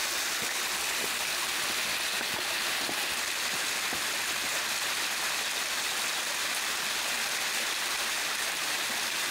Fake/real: real